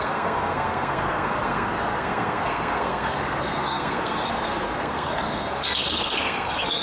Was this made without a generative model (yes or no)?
no